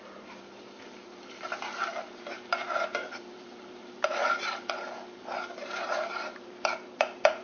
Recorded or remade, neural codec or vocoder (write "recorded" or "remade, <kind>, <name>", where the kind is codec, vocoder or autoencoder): remade, vocoder, BigVGAN v2